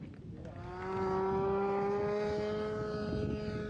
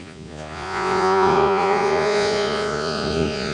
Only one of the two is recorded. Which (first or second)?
first